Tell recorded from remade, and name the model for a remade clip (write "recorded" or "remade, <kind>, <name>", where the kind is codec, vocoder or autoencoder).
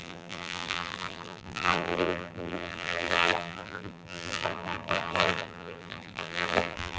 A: remade, vocoder, BigVGAN v2